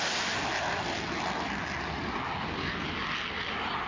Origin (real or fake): real